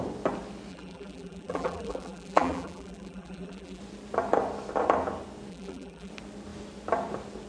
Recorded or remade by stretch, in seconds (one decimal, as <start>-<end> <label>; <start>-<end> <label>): 0.0-0.7 recorded; 0.7-3.8 remade; 3.8-5.5 recorded; 5.5-6.1 remade; 6.1-7.5 recorded